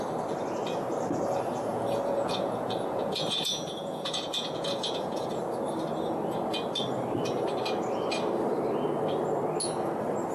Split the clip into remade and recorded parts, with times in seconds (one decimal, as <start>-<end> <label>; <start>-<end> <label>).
0.0-1.7 recorded; 1.7-5.4 remade; 5.4-10.3 recorded

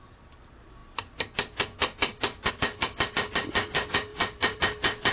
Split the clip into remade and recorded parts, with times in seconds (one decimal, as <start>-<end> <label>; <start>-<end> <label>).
0.0-4.1 recorded; 4.1-4.6 remade; 4.6-5.1 recorded

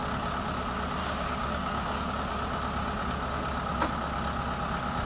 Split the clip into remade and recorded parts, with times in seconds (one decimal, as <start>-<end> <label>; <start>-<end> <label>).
0.0-1.0 recorded; 1.0-2.1 remade; 2.1-5.1 recorded

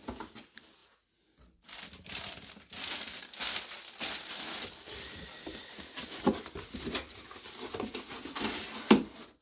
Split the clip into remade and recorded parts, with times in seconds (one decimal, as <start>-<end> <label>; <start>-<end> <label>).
0.0-9.4 recorded

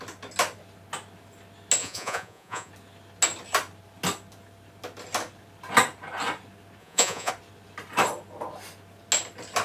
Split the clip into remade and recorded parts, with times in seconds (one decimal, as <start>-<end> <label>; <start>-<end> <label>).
0.0-1.8 recorded; 1.8-2.7 remade; 2.7-6.8 recorded; 6.8-7.3 remade; 7.3-9.6 recorded

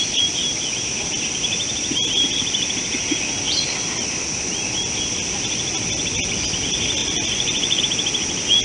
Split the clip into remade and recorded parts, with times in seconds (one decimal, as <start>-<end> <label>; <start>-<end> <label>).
0.0-7.0 recorded; 7.0-7.8 remade; 7.8-8.6 recorded

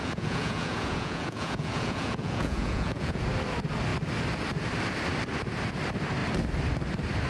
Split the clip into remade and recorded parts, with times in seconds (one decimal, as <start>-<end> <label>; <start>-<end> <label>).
0.0-3.2 remade; 3.2-7.3 recorded

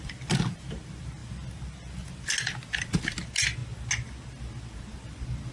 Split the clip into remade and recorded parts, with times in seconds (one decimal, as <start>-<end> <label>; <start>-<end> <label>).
0.0-5.5 recorded